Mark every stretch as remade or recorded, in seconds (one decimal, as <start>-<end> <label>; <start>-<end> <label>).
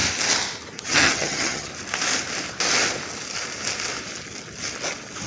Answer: 0.0-0.8 recorded; 0.8-1.7 remade; 1.7-5.3 recorded